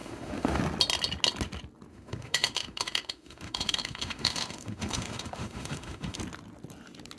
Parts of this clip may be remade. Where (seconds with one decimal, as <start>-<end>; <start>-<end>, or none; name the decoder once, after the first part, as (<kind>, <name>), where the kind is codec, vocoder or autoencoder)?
0.0-0.6 (autoencoder, DAC-VAE); 1.9-6.2